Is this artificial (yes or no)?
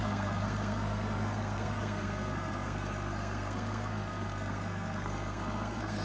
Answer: yes